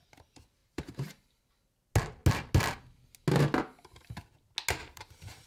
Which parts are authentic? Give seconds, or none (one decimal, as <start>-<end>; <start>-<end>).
0.0-0.6; 1.4-4.8